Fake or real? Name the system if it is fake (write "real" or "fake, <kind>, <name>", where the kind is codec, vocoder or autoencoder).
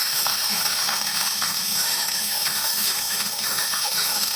fake, autoencoder, DAC-VAE